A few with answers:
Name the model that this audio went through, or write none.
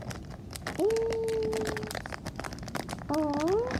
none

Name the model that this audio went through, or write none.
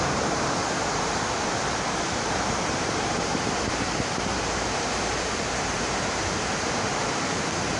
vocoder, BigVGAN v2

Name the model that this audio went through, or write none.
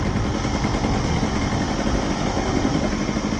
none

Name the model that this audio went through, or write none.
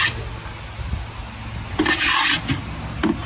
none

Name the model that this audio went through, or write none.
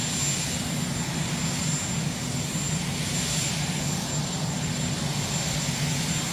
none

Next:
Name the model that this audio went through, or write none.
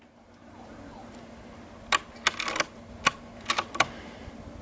none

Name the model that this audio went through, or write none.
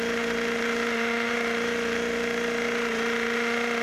none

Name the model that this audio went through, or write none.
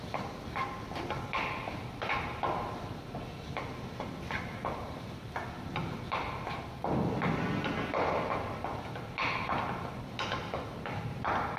none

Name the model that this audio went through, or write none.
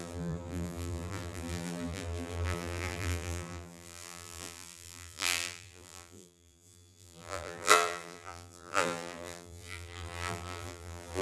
vocoder, BigVGAN v2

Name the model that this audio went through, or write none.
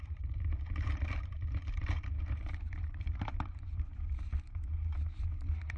vocoder, BigVGAN v2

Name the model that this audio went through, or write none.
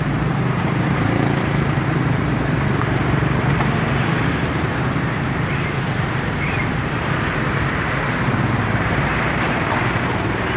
vocoder, BigVGAN v2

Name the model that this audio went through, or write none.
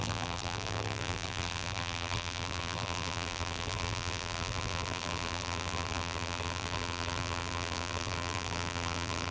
vocoder, BigVGAN v2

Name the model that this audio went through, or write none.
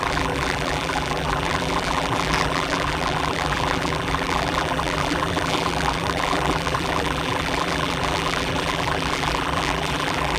vocoder, BigVGAN v2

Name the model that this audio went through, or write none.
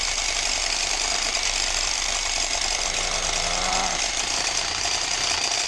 vocoder, BigVGAN v2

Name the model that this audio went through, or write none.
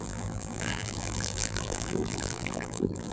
vocoder, BigVGAN v2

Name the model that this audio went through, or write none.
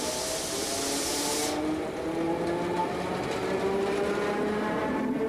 none